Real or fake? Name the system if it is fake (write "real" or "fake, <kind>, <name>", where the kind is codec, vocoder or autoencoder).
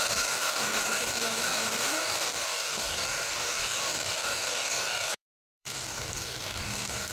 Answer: fake, codec, DAC